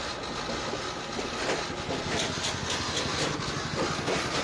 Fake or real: real